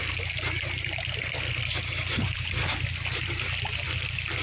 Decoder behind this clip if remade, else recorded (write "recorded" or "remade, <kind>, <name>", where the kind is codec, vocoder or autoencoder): recorded